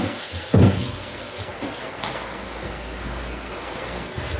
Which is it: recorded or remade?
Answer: remade